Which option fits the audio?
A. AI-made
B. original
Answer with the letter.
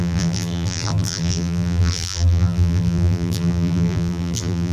A